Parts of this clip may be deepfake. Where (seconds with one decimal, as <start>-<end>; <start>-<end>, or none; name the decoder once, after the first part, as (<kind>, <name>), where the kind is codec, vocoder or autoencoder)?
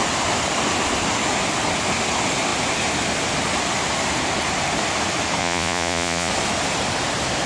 5.4-6.3 (vocoder, Vocos)